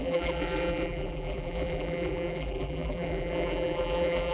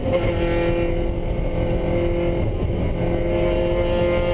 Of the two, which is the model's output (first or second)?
first